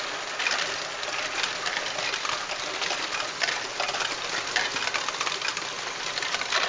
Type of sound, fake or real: real